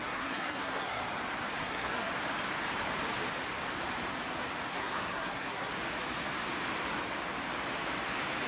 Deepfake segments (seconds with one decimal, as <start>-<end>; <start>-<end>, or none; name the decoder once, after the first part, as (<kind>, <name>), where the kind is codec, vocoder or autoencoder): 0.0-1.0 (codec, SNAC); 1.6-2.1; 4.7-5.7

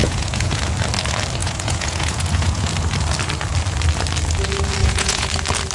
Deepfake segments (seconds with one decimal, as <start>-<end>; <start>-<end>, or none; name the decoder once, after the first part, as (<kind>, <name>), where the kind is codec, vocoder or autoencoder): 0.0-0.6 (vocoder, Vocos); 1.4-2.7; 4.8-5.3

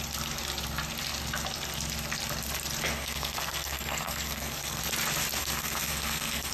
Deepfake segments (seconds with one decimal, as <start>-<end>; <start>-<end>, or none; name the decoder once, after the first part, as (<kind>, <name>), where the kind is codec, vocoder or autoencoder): 2.9-4.8 (codec, SNAC); 5.4-6.5